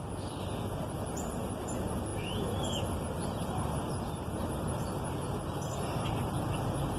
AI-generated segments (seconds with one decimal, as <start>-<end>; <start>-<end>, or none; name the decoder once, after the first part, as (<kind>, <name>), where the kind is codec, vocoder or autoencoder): none

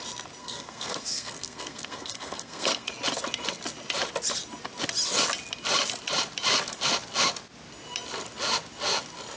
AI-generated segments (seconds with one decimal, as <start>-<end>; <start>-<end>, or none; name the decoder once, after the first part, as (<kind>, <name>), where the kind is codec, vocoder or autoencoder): 0.4-2.9 (codec, SNAC)

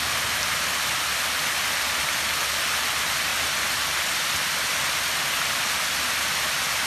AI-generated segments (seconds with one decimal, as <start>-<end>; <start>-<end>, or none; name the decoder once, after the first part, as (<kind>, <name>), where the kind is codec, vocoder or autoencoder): none

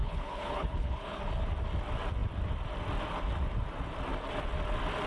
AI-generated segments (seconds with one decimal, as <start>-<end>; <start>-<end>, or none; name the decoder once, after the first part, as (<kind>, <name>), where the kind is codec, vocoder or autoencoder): 0.0-1.2 (codec, HILCodec)